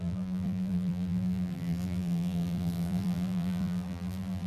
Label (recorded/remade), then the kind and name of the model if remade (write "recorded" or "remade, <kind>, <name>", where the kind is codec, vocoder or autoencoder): remade, vocoder, BigVGAN v2